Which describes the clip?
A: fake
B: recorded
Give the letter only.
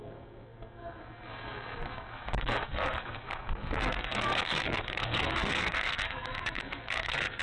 A